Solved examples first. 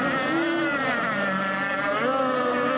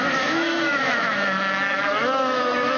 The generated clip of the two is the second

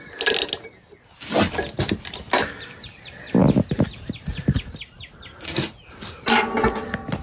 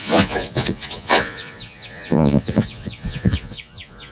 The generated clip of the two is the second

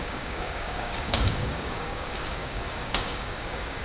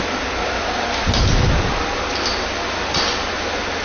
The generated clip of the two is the first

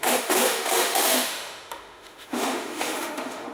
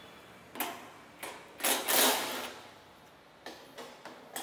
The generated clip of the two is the first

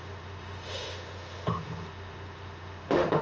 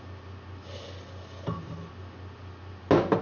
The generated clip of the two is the first